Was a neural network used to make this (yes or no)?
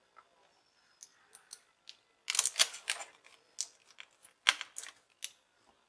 no